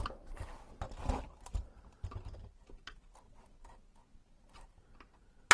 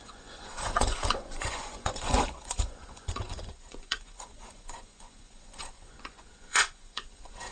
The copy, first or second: second